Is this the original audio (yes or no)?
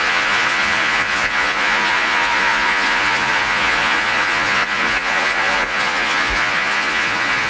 no